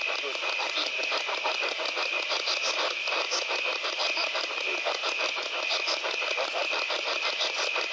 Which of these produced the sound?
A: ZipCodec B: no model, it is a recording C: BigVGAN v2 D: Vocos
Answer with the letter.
B